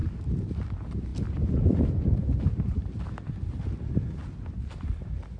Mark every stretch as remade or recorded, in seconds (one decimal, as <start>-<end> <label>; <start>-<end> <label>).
0.0-5.4 recorded